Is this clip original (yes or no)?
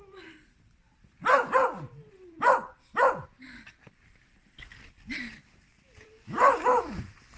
no